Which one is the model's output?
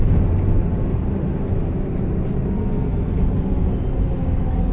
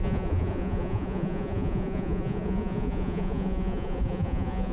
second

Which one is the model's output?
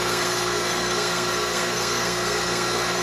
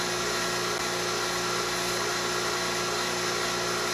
first